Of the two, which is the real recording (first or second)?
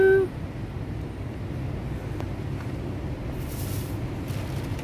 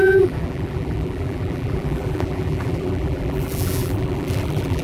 first